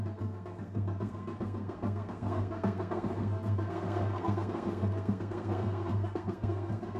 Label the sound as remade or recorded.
remade